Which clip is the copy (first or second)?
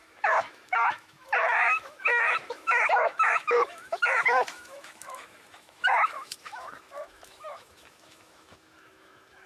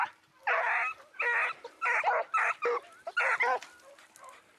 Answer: first